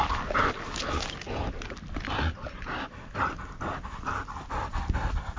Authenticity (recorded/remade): recorded